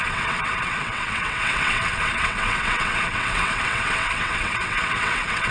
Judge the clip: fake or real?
fake